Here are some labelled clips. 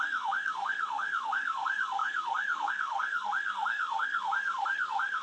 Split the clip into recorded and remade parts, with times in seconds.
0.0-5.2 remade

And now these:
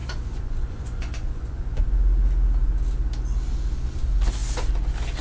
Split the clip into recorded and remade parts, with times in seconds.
0.0-1.8 remade; 1.8-5.2 recorded

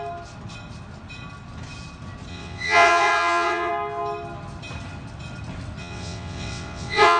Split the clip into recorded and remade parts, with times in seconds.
0.0-2.3 recorded; 2.3-3.7 remade; 3.7-5.8 recorded; 5.8-7.2 remade